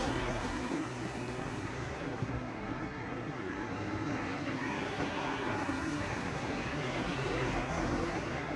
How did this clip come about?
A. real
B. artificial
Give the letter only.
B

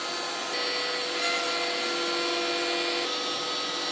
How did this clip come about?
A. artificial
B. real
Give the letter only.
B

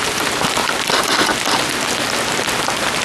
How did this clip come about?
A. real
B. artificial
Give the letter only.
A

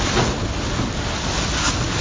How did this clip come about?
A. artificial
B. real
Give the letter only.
B